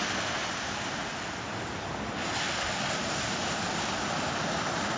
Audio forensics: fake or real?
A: real